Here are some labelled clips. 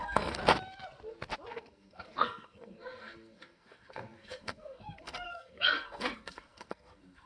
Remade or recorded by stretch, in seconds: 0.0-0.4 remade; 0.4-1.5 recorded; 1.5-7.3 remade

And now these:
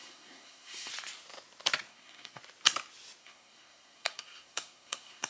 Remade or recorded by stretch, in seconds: 0.0-0.9 remade; 0.9-1.9 recorded; 1.9-2.4 remade; 2.4-3.2 recorded; 3.2-5.3 remade

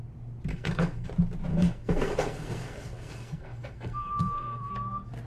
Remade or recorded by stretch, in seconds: 0.0-0.5 recorded; 0.5-1.1 remade; 1.1-1.5 recorded; 1.5-4.7 remade; 4.7-5.3 recorded

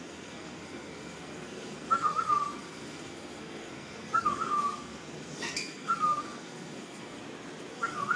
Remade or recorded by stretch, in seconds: 0.0-7.2 remade; 7.2-7.7 recorded; 7.7-8.2 remade

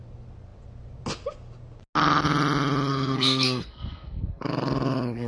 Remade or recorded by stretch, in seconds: 0.0-2.9 recorded; 2.9-4.4 remade; 4.4-5.3 recorded

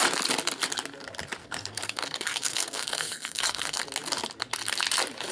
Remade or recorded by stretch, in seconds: 0.0-1.4 recorded; 1.4-3.8 remade; 3.8-5.3 recorded

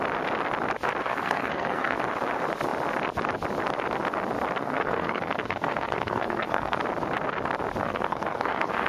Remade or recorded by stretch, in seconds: 0.0-1.0 recorded; 1.0-2.0 remade; 2.0-4.6 recorded; 4.6-6.8 remade; 6.8-7.8 recorded; 7.8-8.9 remade

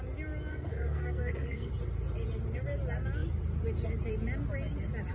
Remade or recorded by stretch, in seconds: 0.0-0.5 recorded; 0.5-1.7 remade; 1.7-5.1 recorded